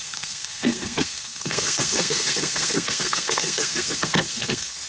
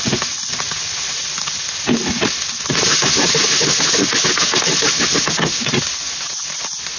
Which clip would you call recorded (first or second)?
second